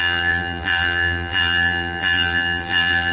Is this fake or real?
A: fake